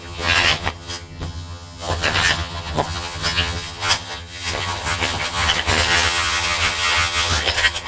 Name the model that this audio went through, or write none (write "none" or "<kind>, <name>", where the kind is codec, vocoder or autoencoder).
vocoder, HiFi-GAN